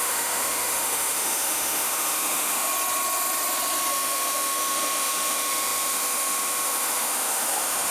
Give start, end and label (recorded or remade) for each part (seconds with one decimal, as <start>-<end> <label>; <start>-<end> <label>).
0.0-2.7 remade; 2.7-3.9 recorded; 3.9-7.9 remade